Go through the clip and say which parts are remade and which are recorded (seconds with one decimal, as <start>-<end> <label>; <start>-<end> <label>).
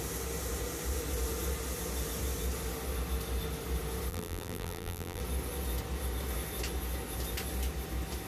0.0-4.1 recorded; 4.1-5.2 remade; 5.2-8.3 recorded